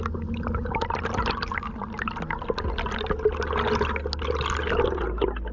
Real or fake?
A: real